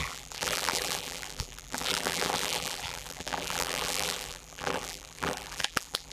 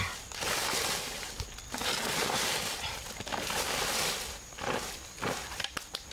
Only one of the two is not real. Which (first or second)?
first